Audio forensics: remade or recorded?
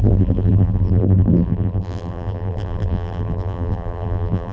remade